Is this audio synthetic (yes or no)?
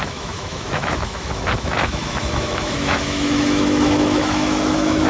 yes